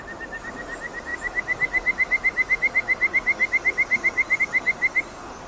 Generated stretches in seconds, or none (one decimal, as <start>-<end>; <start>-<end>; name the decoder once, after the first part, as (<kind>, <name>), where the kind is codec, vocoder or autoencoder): none